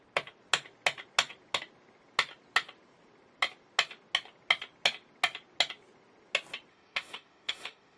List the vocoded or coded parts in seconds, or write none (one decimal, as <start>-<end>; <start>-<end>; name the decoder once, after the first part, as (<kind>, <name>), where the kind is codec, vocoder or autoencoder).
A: 6.7-8.0 (autoencoder, DAC-VAE)

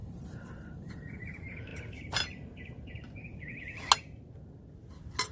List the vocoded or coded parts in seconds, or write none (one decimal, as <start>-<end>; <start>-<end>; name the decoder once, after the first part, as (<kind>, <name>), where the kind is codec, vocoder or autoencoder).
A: 0.0-1.1 (vocoder, BigVGAN v2)

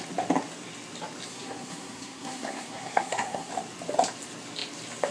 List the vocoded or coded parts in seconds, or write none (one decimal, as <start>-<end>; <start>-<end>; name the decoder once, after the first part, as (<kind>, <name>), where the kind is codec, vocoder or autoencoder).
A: 1.3-3.5 (codec, SNAC)

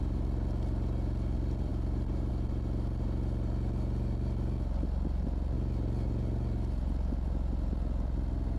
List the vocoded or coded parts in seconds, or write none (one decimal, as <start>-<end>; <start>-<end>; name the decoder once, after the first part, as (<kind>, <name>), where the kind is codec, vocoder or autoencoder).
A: none

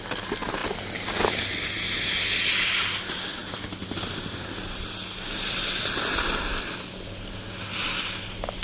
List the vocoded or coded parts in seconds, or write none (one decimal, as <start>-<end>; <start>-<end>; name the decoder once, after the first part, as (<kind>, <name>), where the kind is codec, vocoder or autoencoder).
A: none

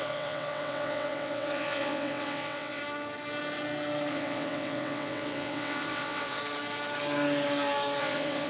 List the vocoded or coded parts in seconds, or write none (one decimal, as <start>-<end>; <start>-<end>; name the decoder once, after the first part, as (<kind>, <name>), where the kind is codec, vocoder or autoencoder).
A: 0.0-2.8 (vocoder, WaveNeXt); 4.1-6.4; 8.0-8.5

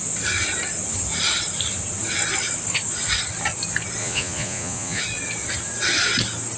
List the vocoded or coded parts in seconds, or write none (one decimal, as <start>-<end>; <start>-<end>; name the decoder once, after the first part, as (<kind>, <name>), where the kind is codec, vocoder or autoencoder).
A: 4.0-5.0 (vocoder, Vocos)

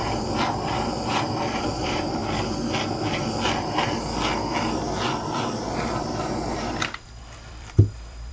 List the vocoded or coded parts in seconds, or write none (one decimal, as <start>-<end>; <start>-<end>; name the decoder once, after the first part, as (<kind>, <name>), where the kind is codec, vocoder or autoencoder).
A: 0.7-2.2 (vocoder, BigVGAN v2); 7.2-8.3